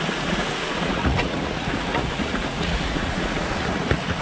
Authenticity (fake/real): fake